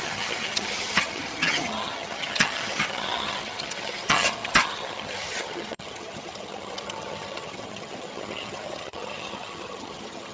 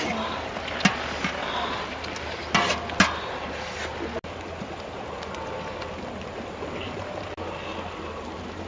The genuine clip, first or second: second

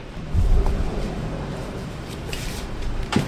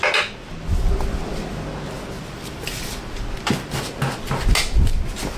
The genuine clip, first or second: second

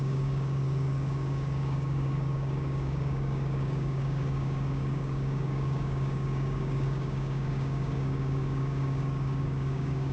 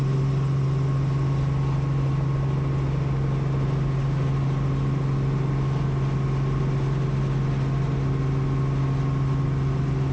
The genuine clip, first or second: second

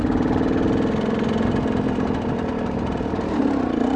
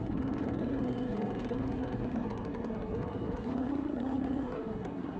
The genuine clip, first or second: first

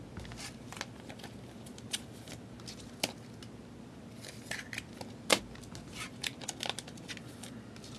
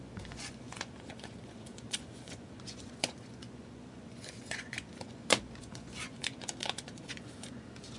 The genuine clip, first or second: first